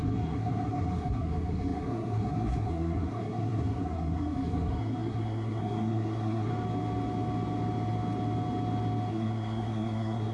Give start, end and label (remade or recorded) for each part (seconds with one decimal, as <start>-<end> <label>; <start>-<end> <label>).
0.0-6.5 remade; 6.5-9.1 recorded; 9.1-10.3 remade